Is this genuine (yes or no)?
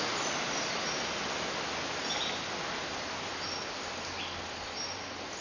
yes